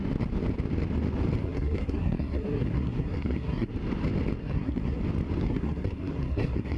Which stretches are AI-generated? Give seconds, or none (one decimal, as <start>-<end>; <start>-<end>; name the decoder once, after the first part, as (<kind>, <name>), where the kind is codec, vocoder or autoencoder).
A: 1.4-3.7 (codec, SNAC); 4.4-5.0; 5.4-6.8